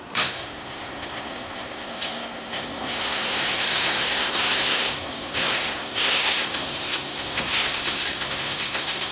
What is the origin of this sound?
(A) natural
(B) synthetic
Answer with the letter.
B